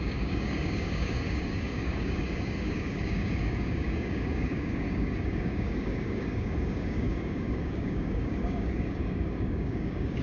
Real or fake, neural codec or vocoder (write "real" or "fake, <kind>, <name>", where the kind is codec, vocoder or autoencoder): fake, codec, DAC